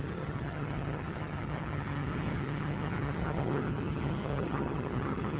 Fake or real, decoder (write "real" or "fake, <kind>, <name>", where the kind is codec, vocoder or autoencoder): fake, vocoder, HiFi-GAN